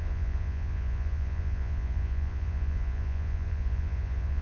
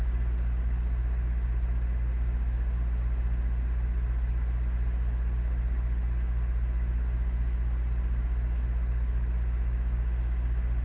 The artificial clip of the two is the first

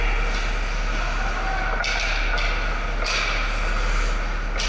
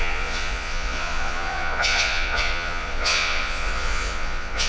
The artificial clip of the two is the second